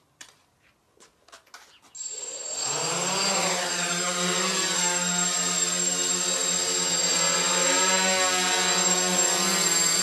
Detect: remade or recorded recorded